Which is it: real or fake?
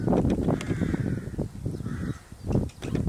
real